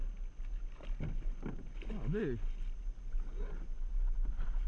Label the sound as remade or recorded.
recorded